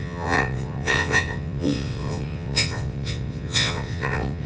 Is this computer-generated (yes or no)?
yes